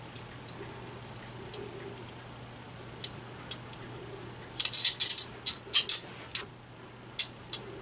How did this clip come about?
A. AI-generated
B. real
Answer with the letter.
B